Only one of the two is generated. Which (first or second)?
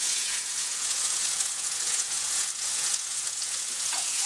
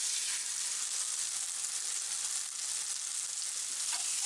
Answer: first